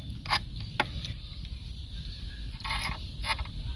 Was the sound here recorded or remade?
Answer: recorded